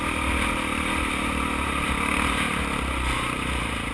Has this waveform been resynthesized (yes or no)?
no